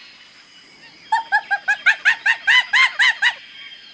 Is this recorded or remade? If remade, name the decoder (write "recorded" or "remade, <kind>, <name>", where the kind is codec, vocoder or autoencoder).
recorded